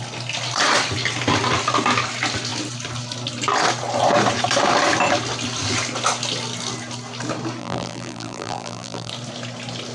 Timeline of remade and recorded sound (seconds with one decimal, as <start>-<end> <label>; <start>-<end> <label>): 0.0-7.6 recorded; 7.6-9.1 remade; 9.1-9.9 recorded